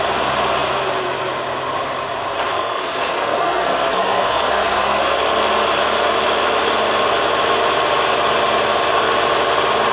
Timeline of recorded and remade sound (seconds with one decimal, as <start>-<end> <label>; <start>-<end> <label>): 0.0-2.5 recorded; 2.5-5.0 remade; 5.0-9.9 recorded